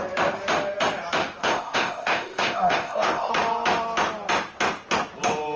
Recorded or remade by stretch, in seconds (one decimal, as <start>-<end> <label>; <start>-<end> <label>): 0.0-1.4 recorded; 1.4-3.3 remade; 3.3-5.6 recorded